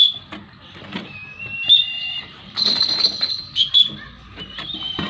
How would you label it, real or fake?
real